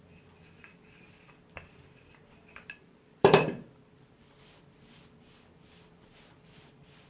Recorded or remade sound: remade